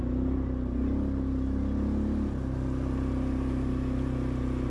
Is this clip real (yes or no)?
yes